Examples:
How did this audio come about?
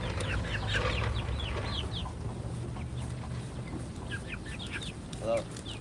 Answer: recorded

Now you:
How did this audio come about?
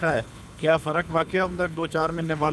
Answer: remade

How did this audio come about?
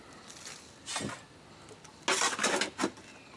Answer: recorded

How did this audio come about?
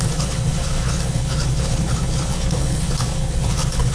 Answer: remade